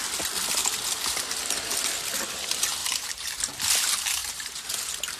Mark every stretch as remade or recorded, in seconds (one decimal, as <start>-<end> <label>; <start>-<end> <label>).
0.0-2.8 recorded; 2.8-3.4 remade; 3.4-4.2 recorded; 4.2-4.7 remade; 4.7-5.2 recorded